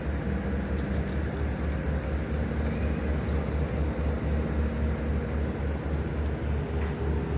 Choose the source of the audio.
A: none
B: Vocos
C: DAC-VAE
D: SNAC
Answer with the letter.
A